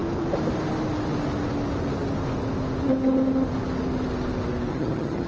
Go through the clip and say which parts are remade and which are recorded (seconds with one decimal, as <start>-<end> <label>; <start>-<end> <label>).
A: 0.0-4.7 recorded; 4.7-5.3 remade